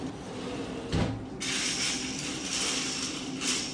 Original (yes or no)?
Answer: yes